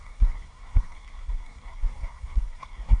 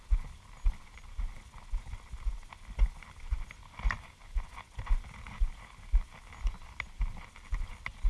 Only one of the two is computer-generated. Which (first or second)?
first